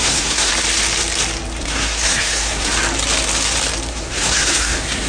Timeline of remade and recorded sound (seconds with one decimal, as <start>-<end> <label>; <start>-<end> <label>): 0.0-0.5 remade; 0.5-1.6 recorded; 1.6-2.7 remade; 2.7-3.9 recorded; 3.9-5.1 remade